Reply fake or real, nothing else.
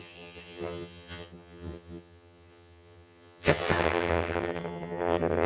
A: fake